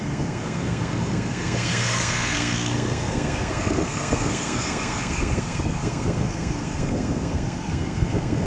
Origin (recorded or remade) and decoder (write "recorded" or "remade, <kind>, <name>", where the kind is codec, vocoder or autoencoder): remade, codec, SNAC